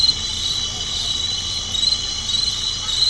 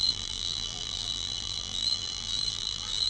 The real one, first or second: first